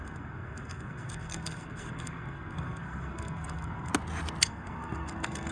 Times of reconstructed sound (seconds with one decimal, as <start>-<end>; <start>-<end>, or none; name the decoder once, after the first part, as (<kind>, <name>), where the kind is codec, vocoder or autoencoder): 0.0-3.9 (codec, SNAC); 4.4-5.5